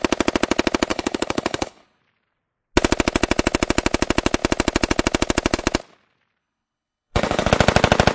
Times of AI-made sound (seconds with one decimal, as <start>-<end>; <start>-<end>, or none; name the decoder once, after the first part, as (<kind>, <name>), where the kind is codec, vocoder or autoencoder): 0.9-2.0 (codec, HILCodec); 6.4-7.5